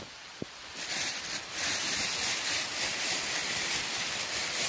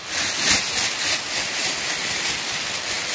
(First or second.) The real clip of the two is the second